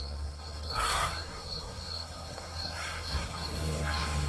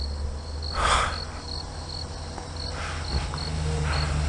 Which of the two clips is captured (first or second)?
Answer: second